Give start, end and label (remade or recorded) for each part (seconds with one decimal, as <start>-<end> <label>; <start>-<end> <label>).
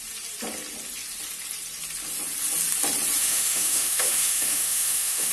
0.0-3.2 recorded; 3.2-5.3 remade